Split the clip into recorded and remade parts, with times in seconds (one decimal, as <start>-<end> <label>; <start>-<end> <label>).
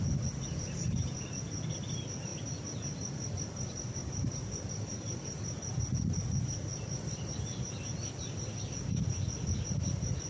0.0-2.3 recorded; 2.3-5.9 remade; 5.9-6.7 recorded; 6.7-8.6 remade; 8.6-10.3 recorded